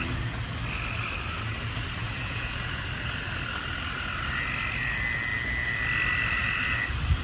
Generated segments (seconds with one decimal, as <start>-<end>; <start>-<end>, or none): 2.0-2.8